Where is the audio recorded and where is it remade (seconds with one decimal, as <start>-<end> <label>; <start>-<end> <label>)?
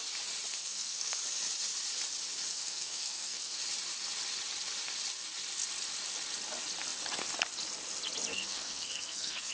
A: 0.0-0.6 recorded; 0.6-1.2 remade; 1.2-2.5 recorded; 2.5-3.6 remade; 3.6-8.3 recorded; 8.3-9.5 remade